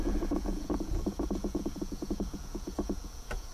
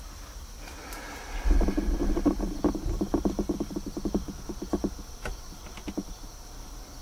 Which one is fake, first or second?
first